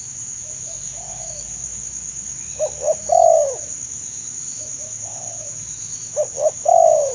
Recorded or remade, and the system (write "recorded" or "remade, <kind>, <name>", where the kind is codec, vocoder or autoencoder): remade, autoencoder, DAC-VAE